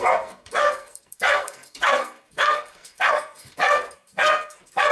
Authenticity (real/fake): fake